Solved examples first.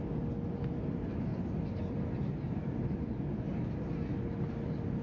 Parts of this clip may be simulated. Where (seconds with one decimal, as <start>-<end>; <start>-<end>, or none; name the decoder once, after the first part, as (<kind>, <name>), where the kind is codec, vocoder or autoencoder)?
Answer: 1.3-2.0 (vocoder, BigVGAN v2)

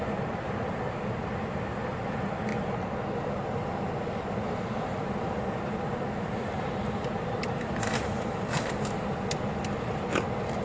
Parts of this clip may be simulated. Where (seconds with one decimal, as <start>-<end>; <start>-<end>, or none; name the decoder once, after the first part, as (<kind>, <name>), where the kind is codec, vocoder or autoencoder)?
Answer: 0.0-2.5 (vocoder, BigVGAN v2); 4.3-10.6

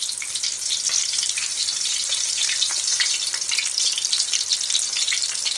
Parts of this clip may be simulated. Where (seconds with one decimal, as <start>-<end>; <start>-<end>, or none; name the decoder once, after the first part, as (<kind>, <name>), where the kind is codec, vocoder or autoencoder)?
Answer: 1.0-2.9 (vocoder, BigVGAN v2)